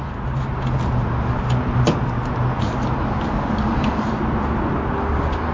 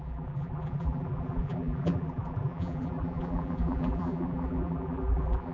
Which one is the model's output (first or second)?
second